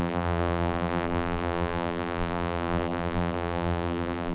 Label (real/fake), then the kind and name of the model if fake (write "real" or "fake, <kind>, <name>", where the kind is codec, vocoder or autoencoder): fake, vocoder, BigVGAN v2